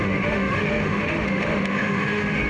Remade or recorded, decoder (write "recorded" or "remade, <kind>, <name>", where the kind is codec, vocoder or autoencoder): remade, autoencoder, DAC-VAE